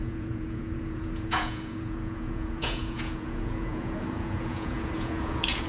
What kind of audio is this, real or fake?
fake